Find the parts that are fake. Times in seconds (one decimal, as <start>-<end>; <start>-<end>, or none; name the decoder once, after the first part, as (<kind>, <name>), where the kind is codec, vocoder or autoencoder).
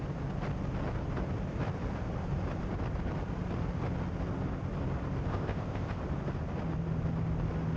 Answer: 5.3-6.0 (codec, ZipCodec)